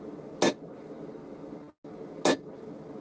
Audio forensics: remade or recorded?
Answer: recorded